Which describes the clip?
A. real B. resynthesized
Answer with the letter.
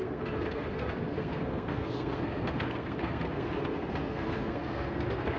B